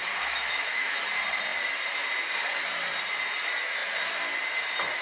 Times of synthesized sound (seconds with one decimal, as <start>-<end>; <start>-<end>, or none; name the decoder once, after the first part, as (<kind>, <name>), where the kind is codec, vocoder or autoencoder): 0.0-1.0 (autoencoder, DAC-VAE)